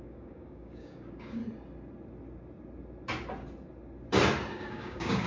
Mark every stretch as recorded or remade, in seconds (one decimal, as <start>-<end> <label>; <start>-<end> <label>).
0.0-1.4 remade; 1.4-4.5 recorded; 4.5-5.3 remade